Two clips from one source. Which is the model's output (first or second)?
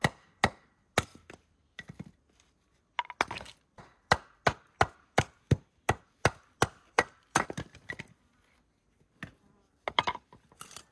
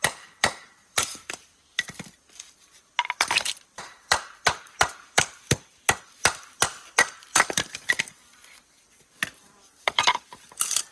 second